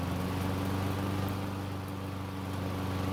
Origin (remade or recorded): recorded